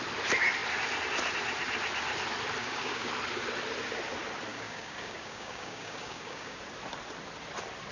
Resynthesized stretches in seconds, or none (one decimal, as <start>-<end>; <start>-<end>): 2.6-3.1; 4.5-6.6